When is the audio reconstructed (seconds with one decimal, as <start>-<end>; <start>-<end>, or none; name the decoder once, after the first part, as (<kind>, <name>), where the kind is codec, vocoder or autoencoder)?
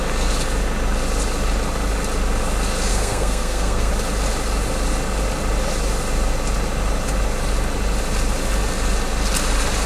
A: 2.9-3.9 (codec, SNAC)